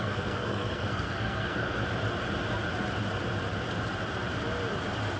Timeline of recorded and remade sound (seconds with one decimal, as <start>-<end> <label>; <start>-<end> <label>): 0.0-1.8 remade; 1.8-5.2 recorded